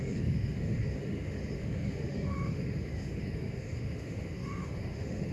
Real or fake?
fake